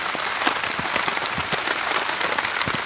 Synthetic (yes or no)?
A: no